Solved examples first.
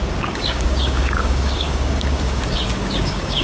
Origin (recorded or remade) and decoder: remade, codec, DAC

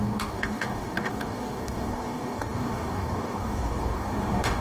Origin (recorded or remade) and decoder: remade, codec, DAC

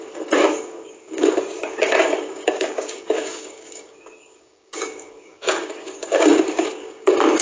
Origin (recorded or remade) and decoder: remade, codec, DAC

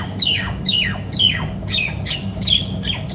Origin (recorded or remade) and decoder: remade, codec, DAC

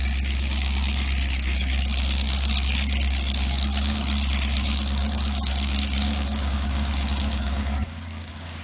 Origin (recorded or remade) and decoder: remade, codec, DAC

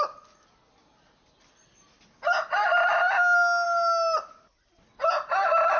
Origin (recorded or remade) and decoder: recorded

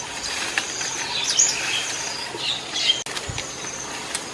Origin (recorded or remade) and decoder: recorded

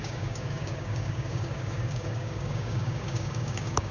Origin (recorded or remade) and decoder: remade, codec, DAC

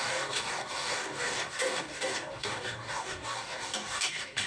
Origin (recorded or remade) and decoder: remade, codec, DAC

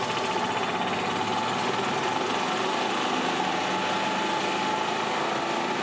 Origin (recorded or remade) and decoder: recorded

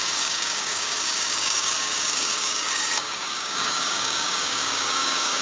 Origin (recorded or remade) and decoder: remade, codec, DAC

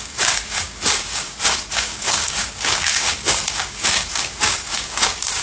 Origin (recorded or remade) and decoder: remade, codec, DAC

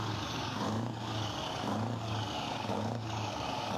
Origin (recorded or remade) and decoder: remade, codec, DAC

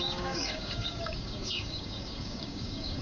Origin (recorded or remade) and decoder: remade, codec, DAC